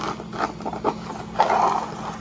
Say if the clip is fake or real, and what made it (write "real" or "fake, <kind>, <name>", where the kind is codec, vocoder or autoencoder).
real